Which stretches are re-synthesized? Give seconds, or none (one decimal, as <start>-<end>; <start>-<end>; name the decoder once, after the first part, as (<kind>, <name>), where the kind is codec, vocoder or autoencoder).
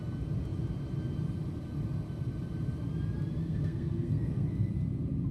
3.4-4.7 (codec, SNAC)